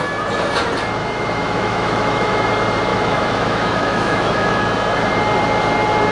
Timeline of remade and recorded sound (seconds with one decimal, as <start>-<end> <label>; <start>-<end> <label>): 0.0-1.0 recorded; 1.0-2.5 remade; 2.5-2.9 recorded; 2.9-4.6 remade; 4.6-6.1 recorded